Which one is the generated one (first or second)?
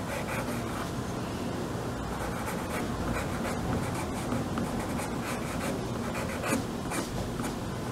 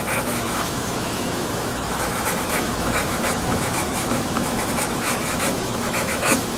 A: second